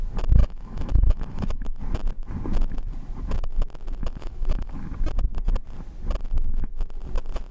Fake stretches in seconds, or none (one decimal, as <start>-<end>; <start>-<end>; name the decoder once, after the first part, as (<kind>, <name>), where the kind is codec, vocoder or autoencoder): 0.4-1.8 (autoencoder, DAC-VAE); 4.0-4.7